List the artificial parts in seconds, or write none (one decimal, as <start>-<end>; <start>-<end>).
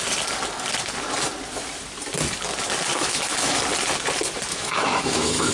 2.9-3.6; 4.5-5.5